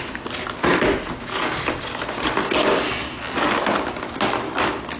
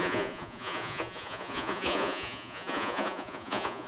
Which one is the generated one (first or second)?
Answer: second